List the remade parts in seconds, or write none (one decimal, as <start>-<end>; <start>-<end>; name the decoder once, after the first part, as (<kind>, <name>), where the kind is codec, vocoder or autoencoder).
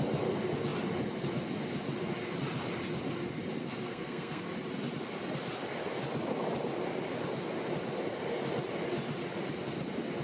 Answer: 3.6-4.4 (codec, SNAC)